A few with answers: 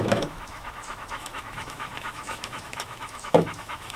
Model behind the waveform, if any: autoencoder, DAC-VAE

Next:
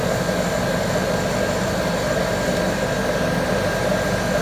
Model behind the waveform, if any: none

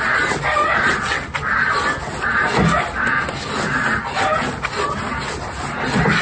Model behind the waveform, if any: none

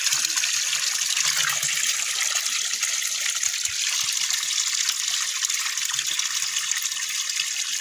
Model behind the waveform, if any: none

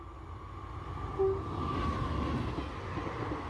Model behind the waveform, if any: none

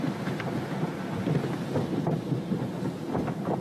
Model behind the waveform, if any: none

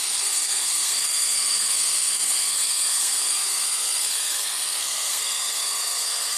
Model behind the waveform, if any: codec, SNAC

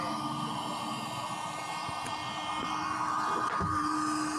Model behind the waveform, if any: none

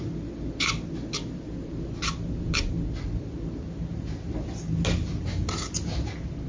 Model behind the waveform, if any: none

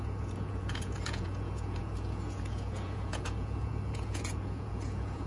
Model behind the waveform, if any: vocoder, Vocos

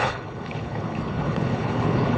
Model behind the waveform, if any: codec, HILCodec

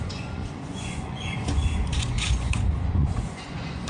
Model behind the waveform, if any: vocoder, Vocos